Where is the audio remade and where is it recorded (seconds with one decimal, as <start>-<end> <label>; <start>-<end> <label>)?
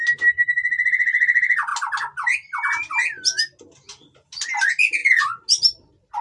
0.0-6.2 recorded